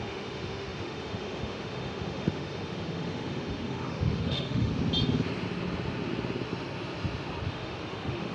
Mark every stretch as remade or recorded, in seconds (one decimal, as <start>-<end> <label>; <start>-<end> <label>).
0.0-4.7 remade; 4.7-7.5 recorded; 7.5-8.3 remade